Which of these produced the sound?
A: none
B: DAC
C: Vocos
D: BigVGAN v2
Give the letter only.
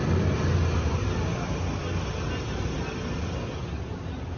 A